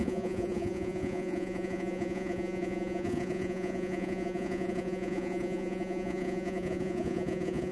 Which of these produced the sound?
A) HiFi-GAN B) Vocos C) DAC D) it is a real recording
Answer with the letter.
B